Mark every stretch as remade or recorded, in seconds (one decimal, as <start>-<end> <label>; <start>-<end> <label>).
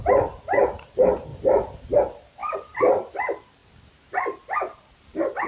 0.0-1.3 recorded; 1.3-2.0 remade; 2.0-2.4 recorded; 2.4-2.9 remade; 2.9-3.6 recorded; 3.6-4.4 remade; 4.4-5.5 recorded